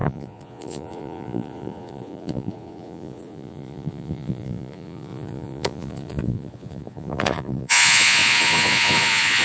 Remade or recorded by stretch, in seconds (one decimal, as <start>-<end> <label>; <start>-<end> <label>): 0.0-9.4 remade